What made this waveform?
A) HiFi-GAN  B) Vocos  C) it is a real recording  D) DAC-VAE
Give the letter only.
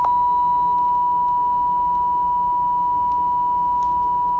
C